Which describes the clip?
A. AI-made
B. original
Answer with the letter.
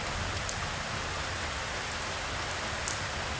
B